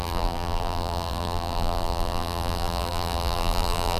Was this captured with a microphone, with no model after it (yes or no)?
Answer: no